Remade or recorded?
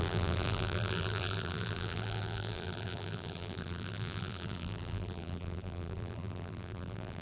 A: remade